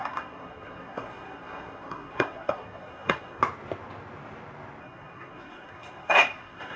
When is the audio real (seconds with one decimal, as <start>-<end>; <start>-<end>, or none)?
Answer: 3.4-4.8